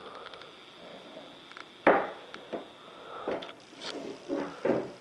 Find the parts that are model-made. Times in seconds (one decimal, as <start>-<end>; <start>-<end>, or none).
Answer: none